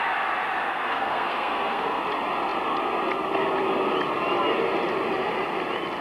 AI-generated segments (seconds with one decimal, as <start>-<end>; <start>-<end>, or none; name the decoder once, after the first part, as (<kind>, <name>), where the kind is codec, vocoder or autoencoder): 0.7-2.0 (codec, SNAC)